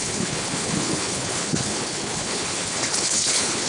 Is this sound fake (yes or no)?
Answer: yes